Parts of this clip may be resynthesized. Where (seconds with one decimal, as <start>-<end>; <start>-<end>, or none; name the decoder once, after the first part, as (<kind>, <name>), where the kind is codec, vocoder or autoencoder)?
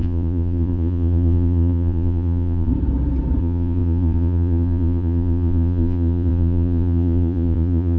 0.0-2.7 (vocoder, Vocos); 3.4-8.0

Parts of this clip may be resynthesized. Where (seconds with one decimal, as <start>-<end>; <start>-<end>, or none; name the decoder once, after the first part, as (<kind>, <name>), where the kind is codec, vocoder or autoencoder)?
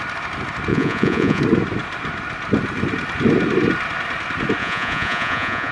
0.7-1.4 (vocoder, Vocos); 4.6-5.7